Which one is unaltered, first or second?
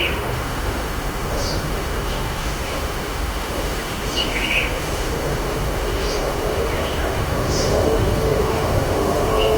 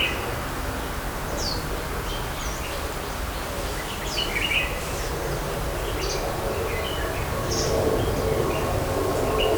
second